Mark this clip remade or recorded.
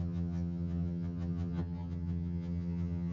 remade